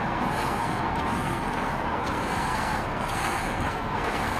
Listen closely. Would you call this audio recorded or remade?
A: remade